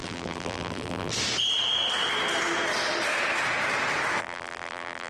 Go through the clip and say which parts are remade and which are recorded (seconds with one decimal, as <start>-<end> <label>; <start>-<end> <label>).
0.0-1.1 remade; 1.1-4.2 recorded; 4.2-5.1 remade